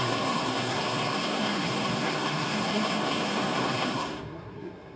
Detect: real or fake fake